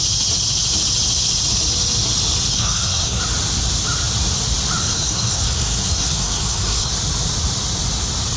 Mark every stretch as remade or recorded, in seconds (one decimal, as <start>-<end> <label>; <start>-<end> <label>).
0.0-2.5 recorded; 2.5-3.2 remade; 3.2-4.8 recorded; 4.8-6.9 remade; 6.9-8.4 recorded